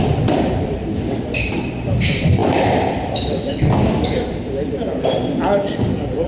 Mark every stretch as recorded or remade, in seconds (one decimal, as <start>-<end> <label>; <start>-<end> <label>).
0.0-6.3 remade